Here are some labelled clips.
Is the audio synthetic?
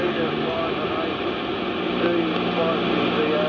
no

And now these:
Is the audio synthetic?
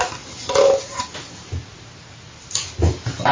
no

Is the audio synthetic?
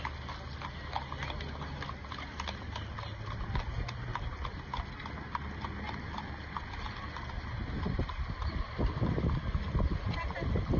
no